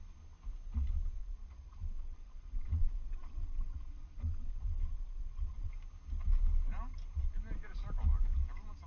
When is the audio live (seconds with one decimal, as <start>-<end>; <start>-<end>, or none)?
0.0-1.2; 5.7-8.9